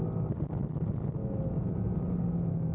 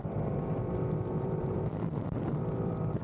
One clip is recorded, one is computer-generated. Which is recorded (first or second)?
first